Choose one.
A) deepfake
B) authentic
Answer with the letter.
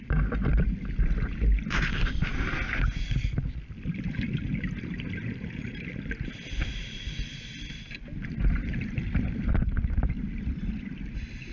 B